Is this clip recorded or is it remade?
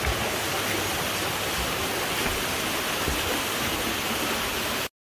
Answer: recorded